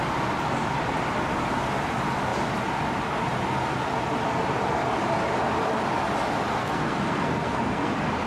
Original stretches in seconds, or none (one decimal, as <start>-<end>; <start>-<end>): 0.0-6.6; 7.9-8.3